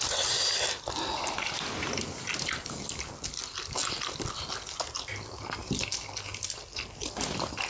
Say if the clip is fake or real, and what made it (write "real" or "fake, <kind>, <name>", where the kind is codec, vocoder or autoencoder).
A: real